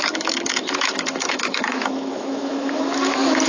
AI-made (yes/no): yes